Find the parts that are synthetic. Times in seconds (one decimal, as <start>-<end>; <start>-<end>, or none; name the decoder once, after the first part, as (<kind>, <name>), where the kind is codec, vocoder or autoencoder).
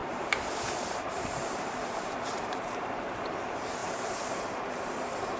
0.0-3.2 (vocoder, BigVGAN v2); 3.8-4.4